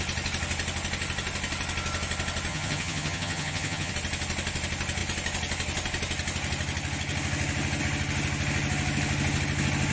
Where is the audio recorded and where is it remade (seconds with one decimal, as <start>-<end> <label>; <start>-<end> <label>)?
0.0-2.5 recorded; 2.5-3.9 remade; 3.9-9.9 recorded